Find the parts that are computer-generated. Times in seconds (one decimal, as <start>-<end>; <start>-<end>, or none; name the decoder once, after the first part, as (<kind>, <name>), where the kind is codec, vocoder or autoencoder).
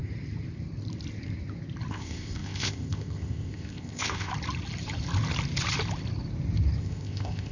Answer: 1.9-4.3 (codec, ZipCodec); 6.8-7.5